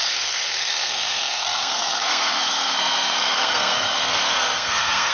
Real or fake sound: fake